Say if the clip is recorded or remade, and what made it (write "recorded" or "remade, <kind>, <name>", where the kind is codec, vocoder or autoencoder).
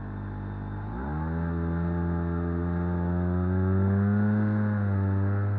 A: recorded